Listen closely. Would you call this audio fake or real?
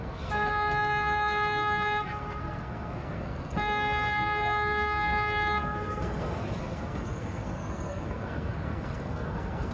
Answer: fake